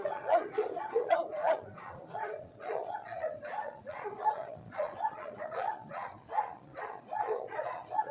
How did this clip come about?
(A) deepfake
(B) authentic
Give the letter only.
A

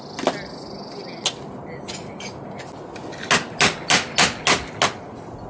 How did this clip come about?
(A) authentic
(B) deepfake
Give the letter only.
A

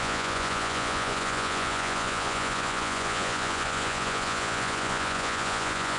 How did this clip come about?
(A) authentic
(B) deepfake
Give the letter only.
B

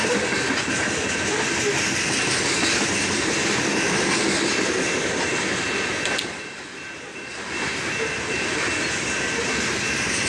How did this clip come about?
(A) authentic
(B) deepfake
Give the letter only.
A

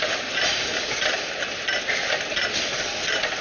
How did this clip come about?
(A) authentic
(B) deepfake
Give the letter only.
A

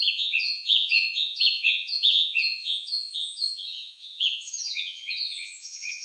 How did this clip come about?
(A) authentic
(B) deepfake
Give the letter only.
B